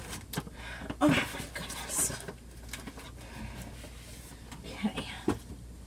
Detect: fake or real real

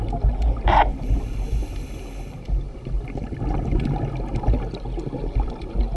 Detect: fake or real real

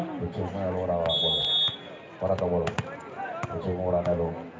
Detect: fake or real real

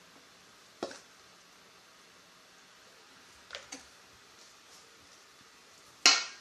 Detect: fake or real real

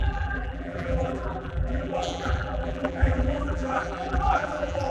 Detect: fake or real fake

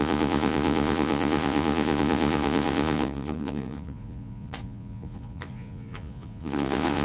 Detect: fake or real fake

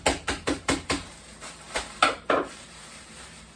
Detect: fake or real fake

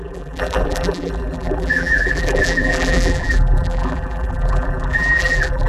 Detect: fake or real fake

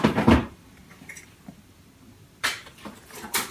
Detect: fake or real fake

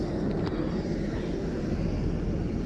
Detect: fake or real real